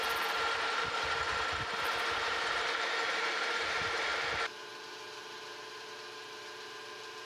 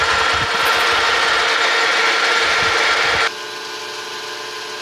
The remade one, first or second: first